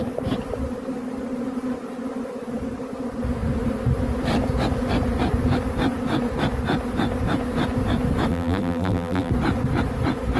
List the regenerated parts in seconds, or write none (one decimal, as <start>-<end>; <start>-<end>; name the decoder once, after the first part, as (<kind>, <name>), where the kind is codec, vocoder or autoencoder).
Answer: 8.3-9.3 (vocoder, BigVGAN v2)

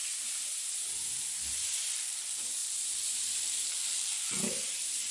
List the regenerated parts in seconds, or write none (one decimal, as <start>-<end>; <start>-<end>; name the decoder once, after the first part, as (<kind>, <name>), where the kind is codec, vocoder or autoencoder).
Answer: 1.8-5.1 (vocoder, BigVGAN v2)

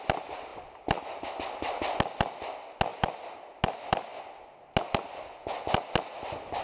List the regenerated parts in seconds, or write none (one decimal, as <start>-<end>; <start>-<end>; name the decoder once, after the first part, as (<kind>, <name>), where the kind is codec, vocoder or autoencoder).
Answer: none

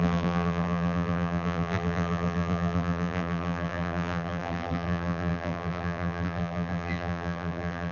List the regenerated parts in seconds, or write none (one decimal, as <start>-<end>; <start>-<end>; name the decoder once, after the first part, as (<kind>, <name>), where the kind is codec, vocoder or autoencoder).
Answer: 0.0-7.9 (vocoder, BigVGAN v2)